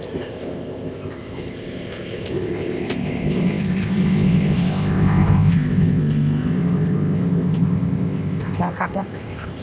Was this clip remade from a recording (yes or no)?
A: yes